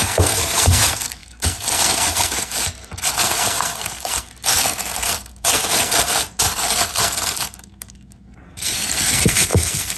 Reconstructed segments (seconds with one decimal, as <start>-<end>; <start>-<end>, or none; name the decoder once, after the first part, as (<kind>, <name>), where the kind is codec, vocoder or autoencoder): 0.0-10.0 (codec, SNAC)